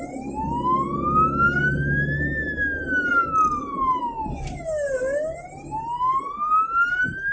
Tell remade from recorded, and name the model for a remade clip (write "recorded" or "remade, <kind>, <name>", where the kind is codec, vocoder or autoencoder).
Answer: recorded